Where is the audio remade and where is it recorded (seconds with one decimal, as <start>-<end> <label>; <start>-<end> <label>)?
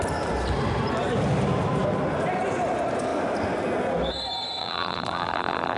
0.0-4.6 recorded; 4.6-5.8 remade